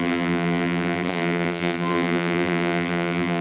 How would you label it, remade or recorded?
remade